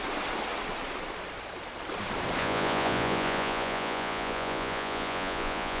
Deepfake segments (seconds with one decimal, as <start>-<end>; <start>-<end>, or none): 2.4-5.8